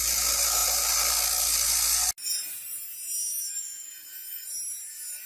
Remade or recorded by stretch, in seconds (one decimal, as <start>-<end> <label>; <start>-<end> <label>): 0.0-3.2 recorded; 3.2-3.9 remade; 3.9-5.3 recorded